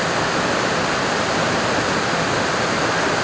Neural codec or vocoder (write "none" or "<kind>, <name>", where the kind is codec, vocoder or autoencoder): none